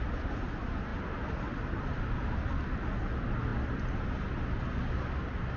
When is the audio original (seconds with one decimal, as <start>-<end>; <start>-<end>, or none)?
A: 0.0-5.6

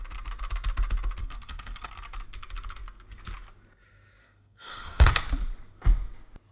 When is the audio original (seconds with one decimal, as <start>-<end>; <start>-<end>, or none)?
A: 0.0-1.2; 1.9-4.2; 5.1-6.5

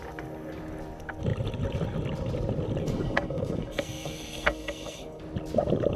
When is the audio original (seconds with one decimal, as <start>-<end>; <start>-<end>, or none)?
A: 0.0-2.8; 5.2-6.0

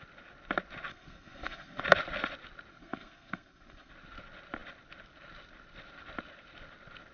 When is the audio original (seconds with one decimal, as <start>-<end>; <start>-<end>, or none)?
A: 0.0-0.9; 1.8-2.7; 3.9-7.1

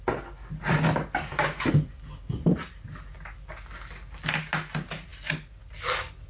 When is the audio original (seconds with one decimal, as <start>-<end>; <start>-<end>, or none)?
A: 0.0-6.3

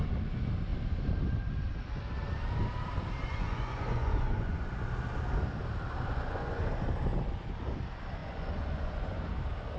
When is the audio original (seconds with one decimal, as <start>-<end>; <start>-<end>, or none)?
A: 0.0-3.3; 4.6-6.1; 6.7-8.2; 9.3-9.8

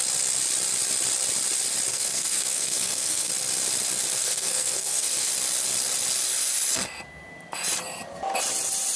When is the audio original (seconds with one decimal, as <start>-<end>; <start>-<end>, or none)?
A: 0.0-1.9; 3.3-4.2; 5.3-9.0

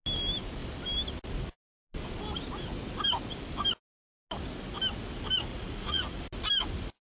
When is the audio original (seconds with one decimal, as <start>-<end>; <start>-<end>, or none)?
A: 0.0-5.5; 6.2-7.1